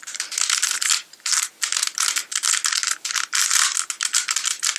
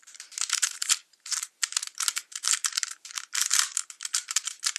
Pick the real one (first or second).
first